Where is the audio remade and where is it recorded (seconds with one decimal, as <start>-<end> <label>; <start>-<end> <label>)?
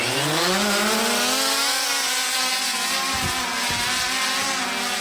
0.0-5.0 recorded